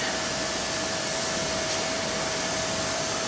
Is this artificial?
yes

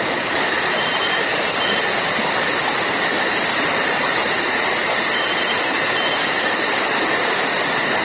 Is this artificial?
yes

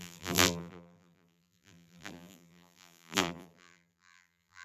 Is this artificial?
yes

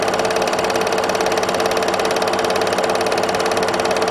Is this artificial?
no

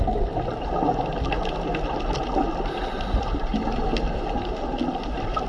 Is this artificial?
no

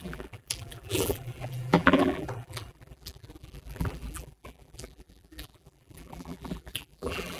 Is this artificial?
yes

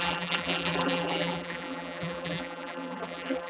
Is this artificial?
yes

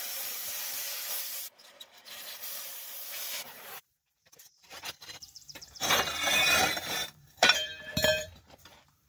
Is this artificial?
yes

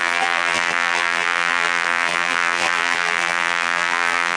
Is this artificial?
yes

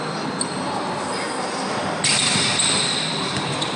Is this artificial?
yes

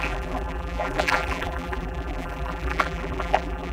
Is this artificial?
yes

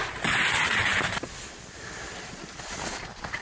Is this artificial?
no